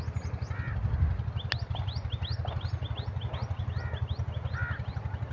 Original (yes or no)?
yes